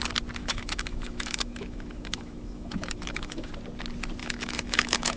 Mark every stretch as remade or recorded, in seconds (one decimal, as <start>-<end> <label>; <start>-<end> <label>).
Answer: 0.0-0.4 recorded; 0.4-3.5 remade; 3.5-4.2 recorded; 4.2-5.2 remade